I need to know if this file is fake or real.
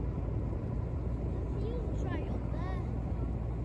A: real